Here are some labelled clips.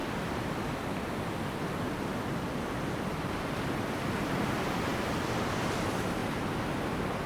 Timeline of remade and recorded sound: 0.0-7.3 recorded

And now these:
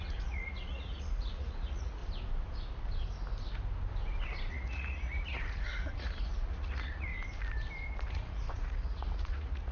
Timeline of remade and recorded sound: 0.0-2.0 remade; 2.0-4.5 recorded; 4.5-7.1 remade; 7.1-8.1 recorded; 8.1-9.7 remade

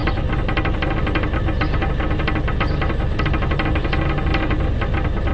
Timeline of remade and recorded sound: 0.0-5.3 recorded